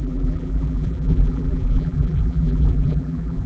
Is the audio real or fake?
fake